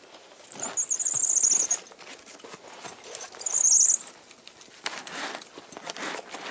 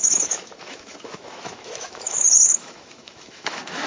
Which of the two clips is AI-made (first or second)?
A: second